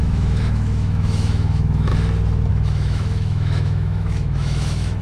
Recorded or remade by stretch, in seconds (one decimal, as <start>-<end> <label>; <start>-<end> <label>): 0.0-1.9 remade; 1.9-2.5 recorded; 2.5-5.0 remade